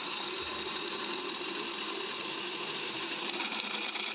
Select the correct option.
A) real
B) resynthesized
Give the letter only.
B